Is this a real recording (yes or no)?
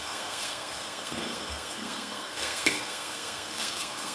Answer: no